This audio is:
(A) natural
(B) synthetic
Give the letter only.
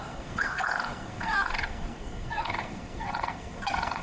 B